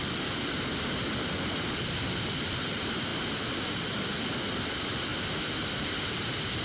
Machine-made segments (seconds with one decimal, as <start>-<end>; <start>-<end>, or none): none